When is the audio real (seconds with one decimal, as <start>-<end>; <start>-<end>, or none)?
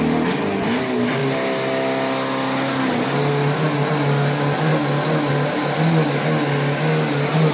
0.0-7.5